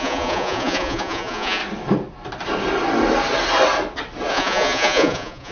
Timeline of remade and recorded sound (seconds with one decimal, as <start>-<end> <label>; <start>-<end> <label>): 0.0-1.6 remade; 1.6-4.3 recorded; 4.3-5.5 remade